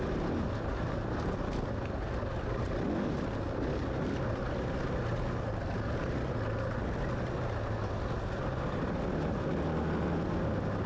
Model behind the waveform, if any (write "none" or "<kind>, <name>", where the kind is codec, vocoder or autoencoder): none